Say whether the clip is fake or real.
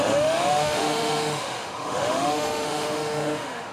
fake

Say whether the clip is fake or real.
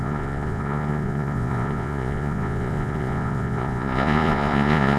fake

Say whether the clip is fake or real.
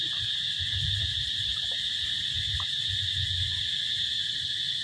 real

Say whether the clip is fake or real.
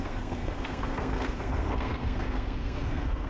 fake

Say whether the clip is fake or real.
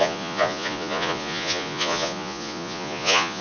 fake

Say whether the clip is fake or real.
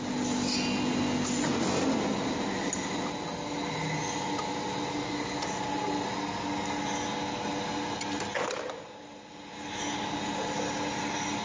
real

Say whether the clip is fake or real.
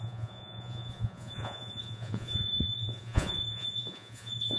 fake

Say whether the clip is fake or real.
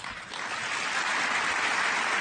real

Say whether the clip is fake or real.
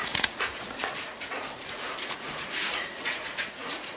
fake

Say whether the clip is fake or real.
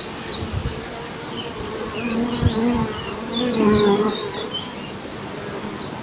real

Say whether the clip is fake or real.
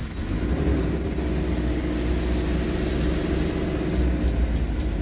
real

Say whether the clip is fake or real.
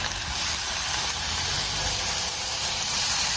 fake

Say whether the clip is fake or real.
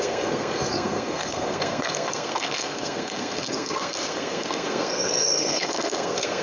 fake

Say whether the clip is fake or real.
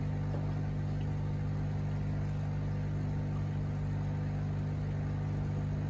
real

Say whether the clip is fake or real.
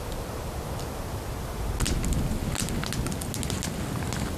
real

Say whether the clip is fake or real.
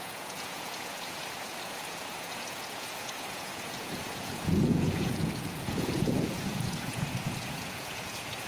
fake